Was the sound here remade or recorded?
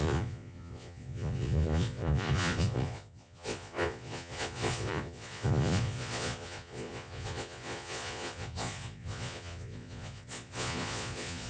remade